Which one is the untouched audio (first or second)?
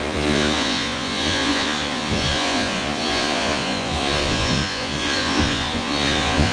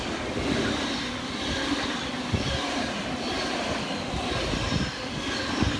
second